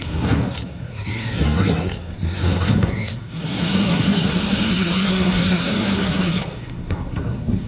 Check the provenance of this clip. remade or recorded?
remade